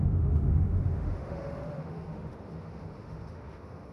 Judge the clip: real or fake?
fake